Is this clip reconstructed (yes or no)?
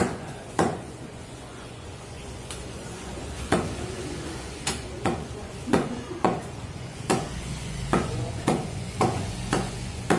yes